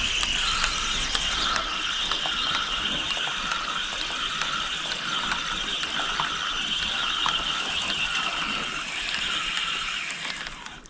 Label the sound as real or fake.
real